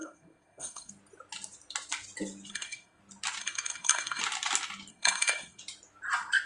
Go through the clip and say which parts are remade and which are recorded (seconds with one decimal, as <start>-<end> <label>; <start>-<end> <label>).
0.0-0.9 remade; 0.9-2.5 recorded; 2.5-3.0 remade; 3.0-3.4 recorded; 3.4-4.2 remade; 4.2-4.9 recorded; 4.9-5.6 remade; 5.6-6.5 recorded